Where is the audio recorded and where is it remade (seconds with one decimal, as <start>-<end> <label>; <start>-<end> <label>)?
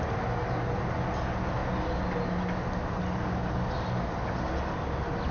0.0-5.3 recorded